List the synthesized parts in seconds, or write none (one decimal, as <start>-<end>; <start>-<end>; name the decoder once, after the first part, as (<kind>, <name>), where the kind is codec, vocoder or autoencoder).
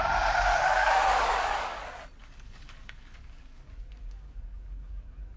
0.5-1.8 (codec, DAC); 2.2-5.4